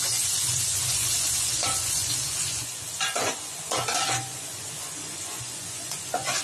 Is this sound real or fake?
fake